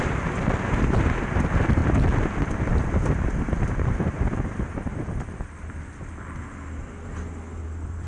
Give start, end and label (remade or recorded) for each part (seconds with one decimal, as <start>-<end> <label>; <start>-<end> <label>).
0.0-1.8 remade; 1.8-2.7 recorded; 2.7-4.9 remade; 4.9-7.6 recorded; 7.6-8.1 remade